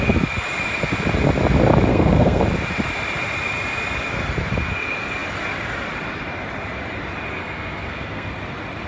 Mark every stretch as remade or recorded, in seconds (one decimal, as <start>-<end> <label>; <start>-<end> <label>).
0.0-1.9 recorded; 1.9-2.4 remade; 2.4-7.4 recorded; 7.4-8.3 remade; 8.3-8.9 recorded